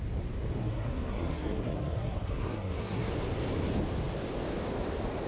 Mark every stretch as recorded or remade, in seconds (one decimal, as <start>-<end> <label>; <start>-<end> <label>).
0.0-0.6 recorded; 0.6-3.1 remade; 3.1-5.3 recorded